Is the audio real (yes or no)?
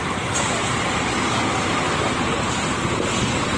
yes